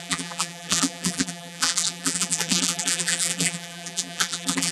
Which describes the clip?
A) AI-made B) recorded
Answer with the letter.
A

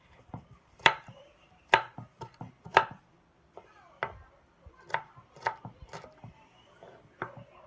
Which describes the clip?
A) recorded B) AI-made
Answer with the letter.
B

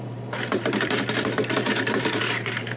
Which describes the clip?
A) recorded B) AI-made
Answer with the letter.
B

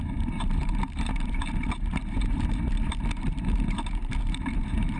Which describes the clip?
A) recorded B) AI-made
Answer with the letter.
B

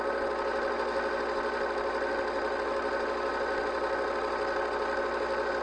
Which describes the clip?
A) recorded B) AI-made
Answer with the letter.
A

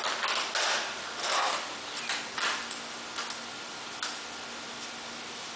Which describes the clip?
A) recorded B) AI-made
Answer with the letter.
A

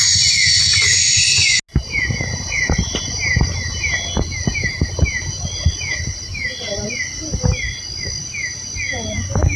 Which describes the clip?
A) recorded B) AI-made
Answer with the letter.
A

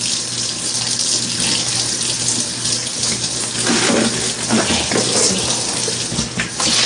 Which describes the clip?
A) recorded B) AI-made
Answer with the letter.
A